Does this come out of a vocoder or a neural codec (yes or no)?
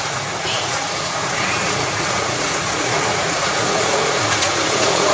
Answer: yes